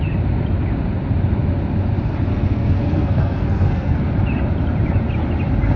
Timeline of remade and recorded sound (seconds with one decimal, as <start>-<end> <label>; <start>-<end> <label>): 0.0-2.3 recorded; 2.3-4.1 remade; 4.1-5.8 recorded